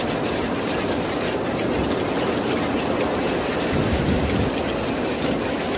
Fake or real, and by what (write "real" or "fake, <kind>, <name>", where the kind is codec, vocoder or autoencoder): real